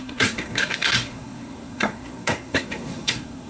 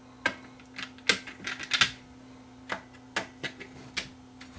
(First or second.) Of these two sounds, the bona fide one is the second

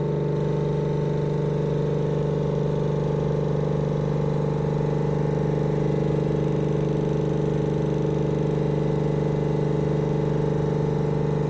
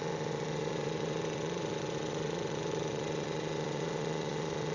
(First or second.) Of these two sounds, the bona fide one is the first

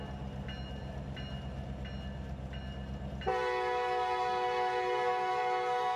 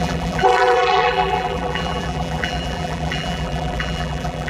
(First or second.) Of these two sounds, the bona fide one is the first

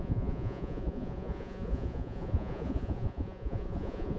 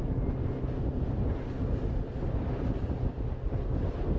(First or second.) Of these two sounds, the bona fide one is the second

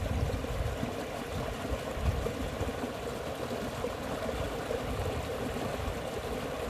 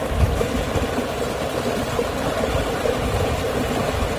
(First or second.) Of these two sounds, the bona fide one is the second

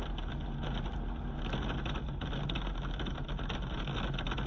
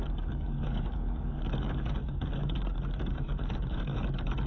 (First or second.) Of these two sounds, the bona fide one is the first